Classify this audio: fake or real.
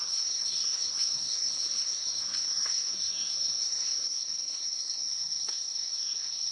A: fake